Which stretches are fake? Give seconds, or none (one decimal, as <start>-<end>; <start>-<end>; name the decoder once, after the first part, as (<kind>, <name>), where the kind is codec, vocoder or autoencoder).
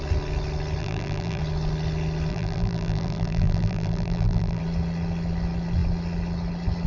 0.8-1.4 (vocoder, BigVGAN v2); 2.3-4.6